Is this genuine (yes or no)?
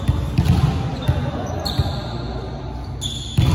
yes